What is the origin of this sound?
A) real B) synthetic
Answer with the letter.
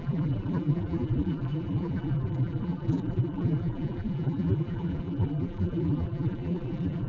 B